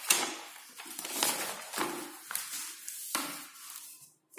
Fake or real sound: real